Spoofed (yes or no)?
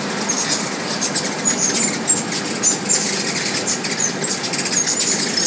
no